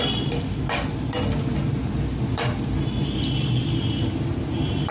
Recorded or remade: recorded